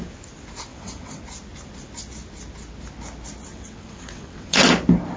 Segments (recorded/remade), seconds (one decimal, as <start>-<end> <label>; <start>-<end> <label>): 0.0-0.7 recorded; 0.7-1.2 remade; 1.2-3.5 recorded; 3.5-4.7 remade; 4.7-5.2 recorded